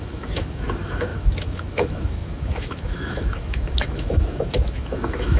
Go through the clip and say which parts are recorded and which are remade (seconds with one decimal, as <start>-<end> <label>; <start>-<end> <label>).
0.0-5.4 remade